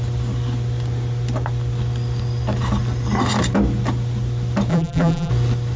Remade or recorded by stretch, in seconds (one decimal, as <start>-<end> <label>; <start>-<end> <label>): 0.0-4.7 recorded; 4.7-5.3 remade; 5.3-5.8 recorded